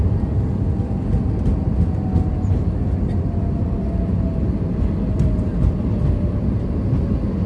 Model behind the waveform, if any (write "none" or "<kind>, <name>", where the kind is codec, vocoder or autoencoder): none